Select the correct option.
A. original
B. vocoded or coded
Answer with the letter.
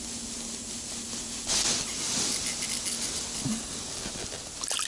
A